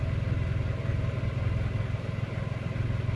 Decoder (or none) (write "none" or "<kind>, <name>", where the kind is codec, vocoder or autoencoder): none